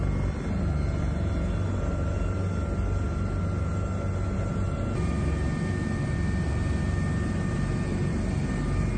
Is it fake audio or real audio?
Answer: real